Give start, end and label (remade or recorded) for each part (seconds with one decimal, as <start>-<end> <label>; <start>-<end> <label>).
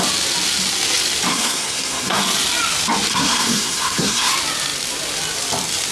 0.0-1.3 recorded; 1.3-2.2 remade; 2.2-3.1 recorded; 3.1-4.3 remade; 4.3-5.9 recorded